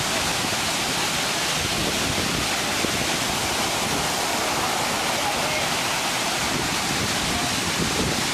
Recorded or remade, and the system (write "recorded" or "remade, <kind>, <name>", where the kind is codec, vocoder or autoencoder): recorded